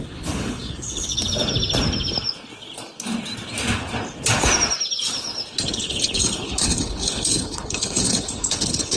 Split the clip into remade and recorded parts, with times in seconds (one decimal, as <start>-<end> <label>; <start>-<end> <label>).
0.0-1.2 remade; 1.2-5.7 recorded; 5.7-9.0 remade